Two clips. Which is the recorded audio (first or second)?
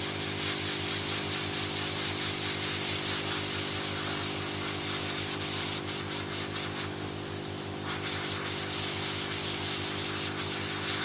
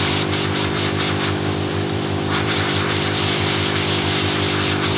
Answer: first